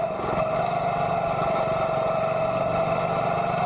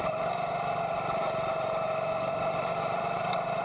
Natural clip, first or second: first